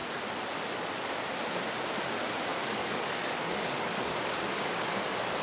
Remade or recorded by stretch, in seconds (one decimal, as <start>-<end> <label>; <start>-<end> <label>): 0.0-2.5 recorded; 2.5-5.4 remade